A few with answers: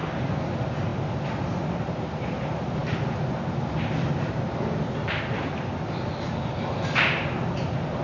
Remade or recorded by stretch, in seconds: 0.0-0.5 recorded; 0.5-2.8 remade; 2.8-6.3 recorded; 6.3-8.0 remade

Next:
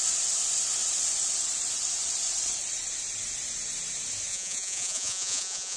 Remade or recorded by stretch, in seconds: 0.0-4.3 recorded; 4.3-5.8 remade

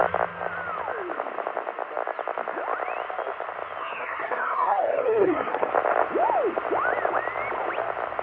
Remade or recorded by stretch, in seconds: 0.0-3.8 recorded; 3.8-5.7 remade; 5.7-8.2 recorded

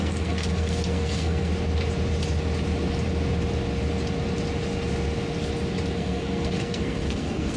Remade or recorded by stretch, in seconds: 0.0-1.5 remade; 1.5-5.9 recorded; 5.9-7.6 remade

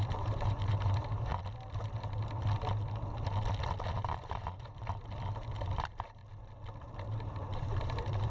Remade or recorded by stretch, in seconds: 0.0-1.3 remade; 1.3-4.0 recorded; 4.0-6.2 remade; 6.2-7.1 recorded; 7.1-8.3 remade

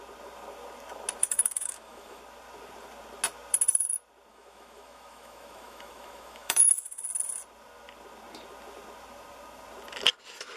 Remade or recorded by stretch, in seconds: 0.0-1.2 recorded; 1.2-2.2 remade; 2.2-4.3 recorded; 4.3-7.0 remade; 7.0-10.6 recorded